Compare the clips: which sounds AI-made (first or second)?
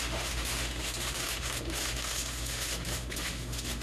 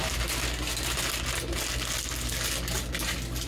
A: first